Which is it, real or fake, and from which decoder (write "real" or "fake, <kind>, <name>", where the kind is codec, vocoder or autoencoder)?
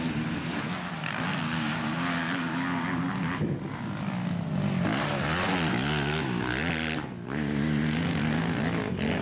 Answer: real